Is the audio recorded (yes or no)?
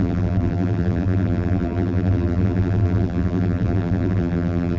no